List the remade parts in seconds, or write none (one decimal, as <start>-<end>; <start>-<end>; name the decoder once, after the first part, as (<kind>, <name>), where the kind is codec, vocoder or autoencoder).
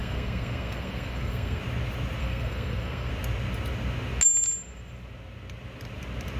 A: 0.0-1.6 (codec, SNAC); 2.2-3.1